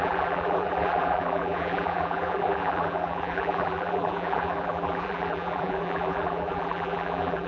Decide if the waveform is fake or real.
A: fake